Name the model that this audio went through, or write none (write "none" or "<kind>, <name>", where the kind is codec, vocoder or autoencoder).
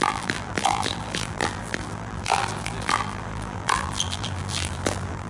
vocoder, BigVGAN v2